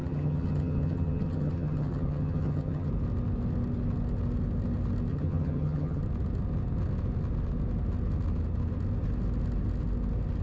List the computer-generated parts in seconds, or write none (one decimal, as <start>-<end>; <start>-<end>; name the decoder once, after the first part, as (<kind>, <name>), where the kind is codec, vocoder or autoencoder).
0.0-2.9 (vocoder, HiFi-GAN); 5.1-6.0